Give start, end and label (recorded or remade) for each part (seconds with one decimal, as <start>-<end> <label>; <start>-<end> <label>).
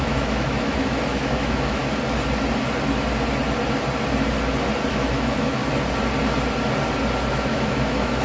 0.0-1.8 remade; 1.8-4.9 recorded; 4.9-5.6 remade; 5.6-7.3 recorded; 7.3-8.2 remade